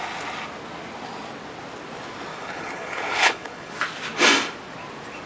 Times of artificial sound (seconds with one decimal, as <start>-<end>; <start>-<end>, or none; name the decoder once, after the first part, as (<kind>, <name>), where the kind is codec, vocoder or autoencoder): 2.3-3.7 (codec, HILCodec)